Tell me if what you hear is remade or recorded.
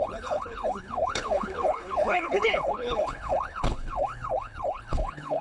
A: remade